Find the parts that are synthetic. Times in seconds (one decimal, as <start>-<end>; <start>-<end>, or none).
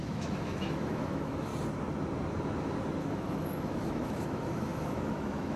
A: 0.0-1.5; 3.0-5.6